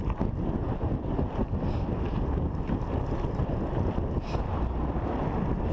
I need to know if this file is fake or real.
real